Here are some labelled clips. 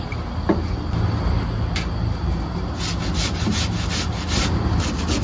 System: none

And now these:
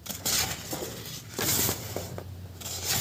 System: vocoder, BigVGAN v2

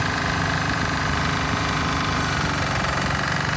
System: vocoder, BigVGAN v2